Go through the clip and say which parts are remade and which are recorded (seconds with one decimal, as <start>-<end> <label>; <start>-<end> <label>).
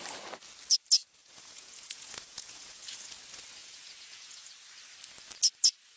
0.0-1.2 recorded; 1.2-3.1 remade; 3.1-3.6 recorded; 3.6-4.5 remade; 4.5-6.0 recorded